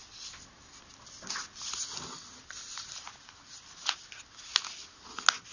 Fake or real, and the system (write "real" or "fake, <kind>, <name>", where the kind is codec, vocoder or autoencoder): real